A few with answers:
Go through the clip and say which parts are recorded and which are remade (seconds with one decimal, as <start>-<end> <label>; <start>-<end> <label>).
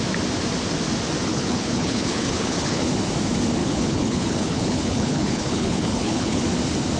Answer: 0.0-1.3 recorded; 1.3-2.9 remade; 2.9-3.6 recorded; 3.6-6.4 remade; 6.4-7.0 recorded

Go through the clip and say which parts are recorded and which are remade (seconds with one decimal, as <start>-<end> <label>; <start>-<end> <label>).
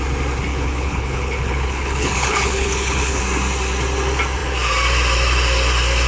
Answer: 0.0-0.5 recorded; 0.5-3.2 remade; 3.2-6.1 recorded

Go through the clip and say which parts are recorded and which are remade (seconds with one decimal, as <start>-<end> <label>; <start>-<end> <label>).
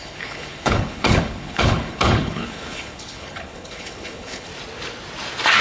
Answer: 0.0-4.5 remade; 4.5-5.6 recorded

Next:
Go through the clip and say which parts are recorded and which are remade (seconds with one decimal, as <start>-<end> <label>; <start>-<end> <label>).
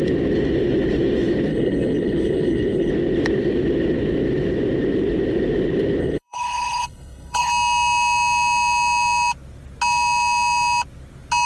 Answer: 0.0-1.5 recorded; 1.5-2.9 remade; 2.9-6.0 recorded; 6.0-7.5 remade; 7.5-11.5 recorded